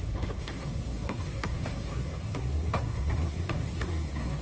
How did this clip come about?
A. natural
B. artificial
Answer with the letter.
B